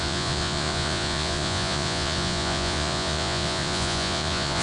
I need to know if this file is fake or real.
fake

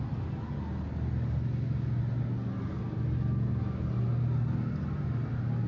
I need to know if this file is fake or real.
real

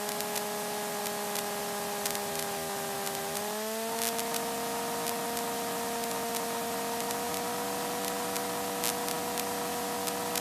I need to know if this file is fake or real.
real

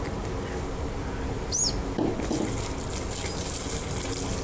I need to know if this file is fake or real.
real